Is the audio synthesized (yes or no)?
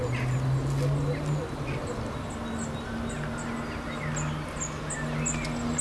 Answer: no